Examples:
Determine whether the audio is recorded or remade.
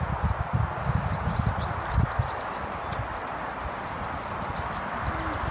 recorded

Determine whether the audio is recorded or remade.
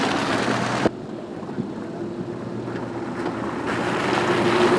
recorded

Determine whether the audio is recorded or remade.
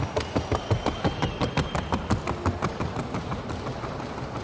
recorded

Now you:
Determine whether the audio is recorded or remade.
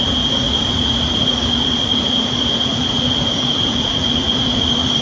remade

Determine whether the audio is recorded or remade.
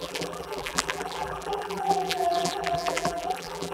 remade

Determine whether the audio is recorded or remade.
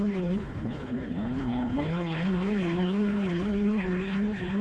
remade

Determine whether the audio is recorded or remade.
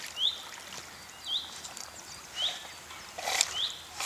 recorded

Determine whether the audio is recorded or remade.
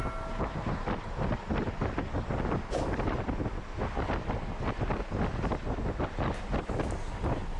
recorded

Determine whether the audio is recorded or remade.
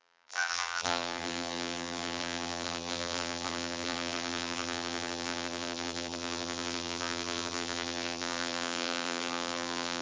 remade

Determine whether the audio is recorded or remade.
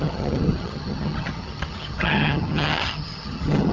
remade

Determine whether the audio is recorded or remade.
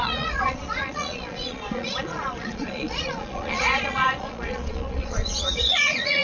remade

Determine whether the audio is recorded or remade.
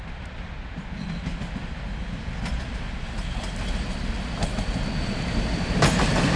recorded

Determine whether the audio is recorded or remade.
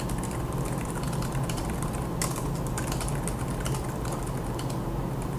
recorded